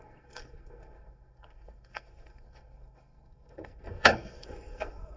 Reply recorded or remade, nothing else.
remade